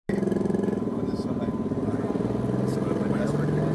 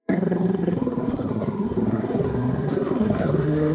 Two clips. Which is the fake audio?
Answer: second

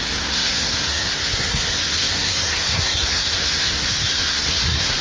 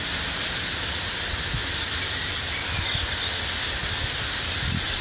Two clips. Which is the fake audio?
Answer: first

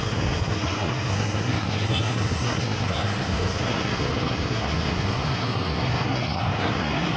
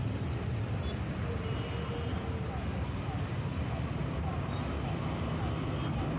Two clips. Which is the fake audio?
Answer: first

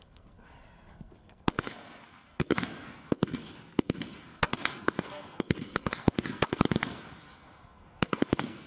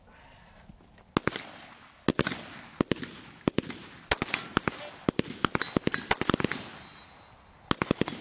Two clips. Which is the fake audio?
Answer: first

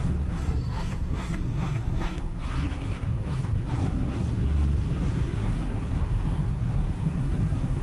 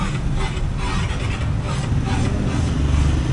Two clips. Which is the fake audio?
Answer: first